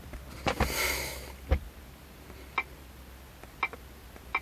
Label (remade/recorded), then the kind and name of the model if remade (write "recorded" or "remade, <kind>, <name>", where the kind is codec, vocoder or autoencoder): recorded